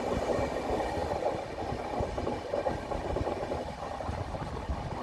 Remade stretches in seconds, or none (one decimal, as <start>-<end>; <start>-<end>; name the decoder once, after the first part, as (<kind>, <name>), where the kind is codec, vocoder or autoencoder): none